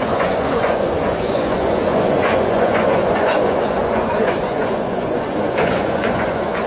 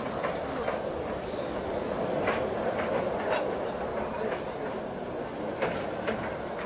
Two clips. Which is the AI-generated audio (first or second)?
first